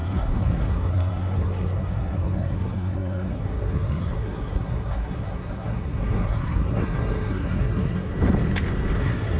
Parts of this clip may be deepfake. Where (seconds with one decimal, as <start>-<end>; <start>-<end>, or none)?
0.0-8.1; 9.0-9.4